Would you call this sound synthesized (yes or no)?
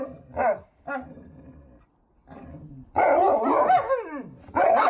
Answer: no